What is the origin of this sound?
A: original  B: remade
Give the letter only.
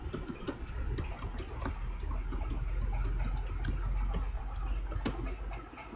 A